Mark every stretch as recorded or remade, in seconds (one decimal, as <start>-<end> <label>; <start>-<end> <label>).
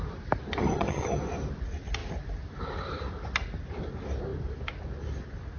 0.0-0.6 recorded; 0.6-1.2 remade; 1.2-5.6 recorded